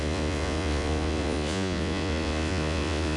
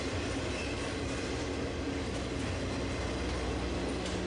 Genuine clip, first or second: second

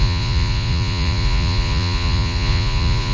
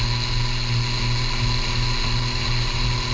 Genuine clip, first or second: second